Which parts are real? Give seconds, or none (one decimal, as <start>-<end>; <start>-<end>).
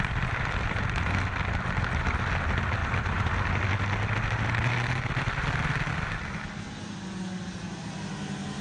0.0-2.8; 3.3-8.6